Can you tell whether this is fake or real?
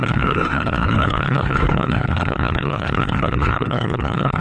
fake